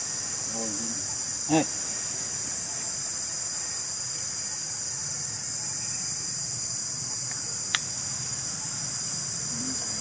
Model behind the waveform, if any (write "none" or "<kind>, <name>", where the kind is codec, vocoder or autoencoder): none